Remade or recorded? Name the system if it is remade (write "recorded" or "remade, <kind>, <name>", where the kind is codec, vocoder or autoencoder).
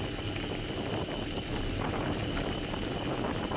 recorded